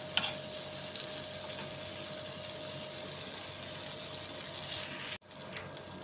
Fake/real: real